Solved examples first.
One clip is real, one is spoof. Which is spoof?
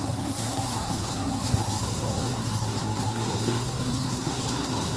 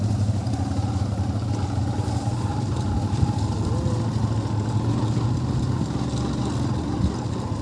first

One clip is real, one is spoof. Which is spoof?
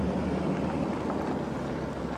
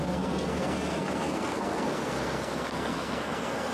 second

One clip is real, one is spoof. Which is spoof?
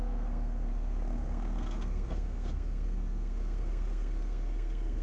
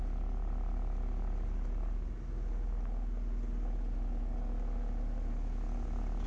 first